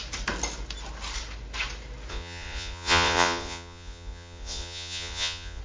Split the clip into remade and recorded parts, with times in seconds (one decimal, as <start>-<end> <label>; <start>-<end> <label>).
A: 0.0-2.1 recorded; 2.1-5.6 remade